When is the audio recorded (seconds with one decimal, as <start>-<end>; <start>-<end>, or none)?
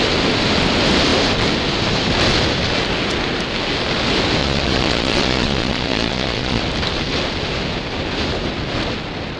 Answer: 0.0-4.4; 6.6-9.4